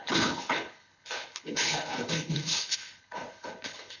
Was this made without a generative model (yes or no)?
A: no